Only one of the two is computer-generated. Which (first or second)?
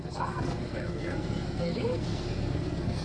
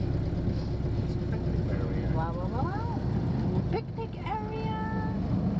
first